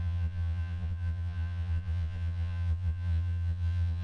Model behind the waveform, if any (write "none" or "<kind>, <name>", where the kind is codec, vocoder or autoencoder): vocoder, Vocos